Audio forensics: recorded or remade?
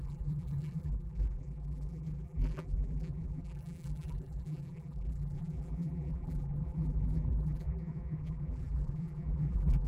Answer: remade